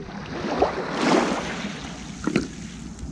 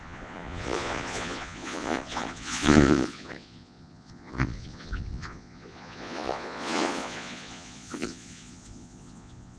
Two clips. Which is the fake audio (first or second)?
second